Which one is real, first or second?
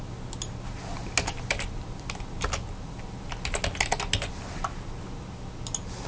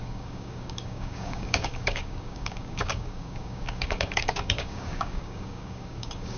first